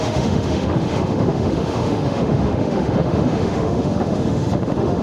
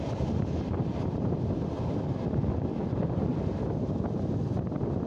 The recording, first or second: second